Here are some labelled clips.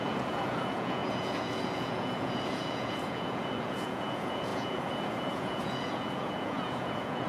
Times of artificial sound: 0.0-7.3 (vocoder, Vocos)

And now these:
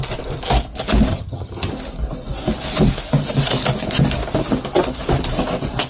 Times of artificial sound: 1.1-1.7 (vocoder, HiFi-GAN)

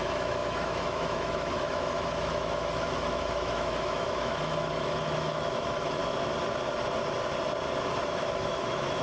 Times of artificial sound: 0.0-6.0 (autoencoder, DAC-VAE); 8.0-9.0

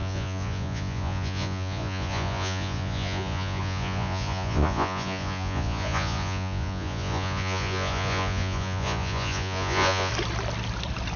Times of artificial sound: 0.0-10.1 (vocoder, Vocos)

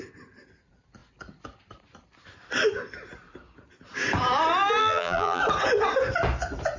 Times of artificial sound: 4.8-5.4 (vocoder, BigVGAN v2)

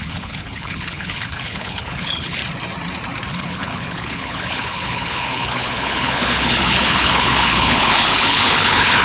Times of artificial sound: 0.0-2.4 (codec, HILCodec); 3.3-9.0

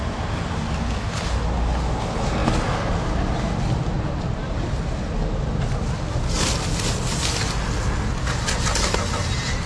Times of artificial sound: none